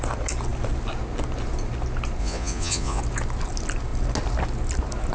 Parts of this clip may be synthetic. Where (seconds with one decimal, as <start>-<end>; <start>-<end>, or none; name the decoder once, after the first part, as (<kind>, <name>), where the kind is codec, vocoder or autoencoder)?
2.2-3.0 (vocoder, Vocos)